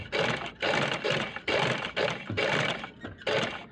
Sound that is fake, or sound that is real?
real